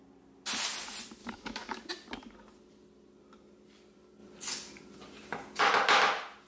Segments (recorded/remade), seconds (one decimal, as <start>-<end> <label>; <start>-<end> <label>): 0.0-1.2 recorded; 1.2-1.9 remade; 1.9-6.5 recorded